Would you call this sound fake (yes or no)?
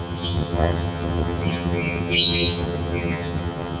yes